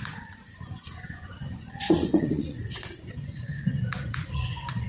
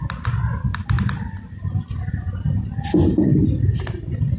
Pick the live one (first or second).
second